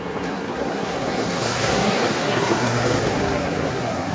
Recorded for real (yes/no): no